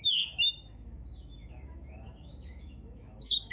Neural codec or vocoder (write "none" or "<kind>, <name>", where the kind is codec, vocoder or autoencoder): autoencoder, DAC-VAE